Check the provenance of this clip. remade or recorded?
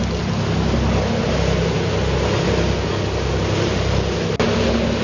recorded